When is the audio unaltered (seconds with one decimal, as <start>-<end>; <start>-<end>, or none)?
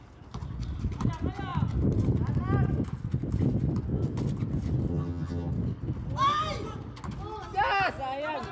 0.0-4.9; 5.5-8.5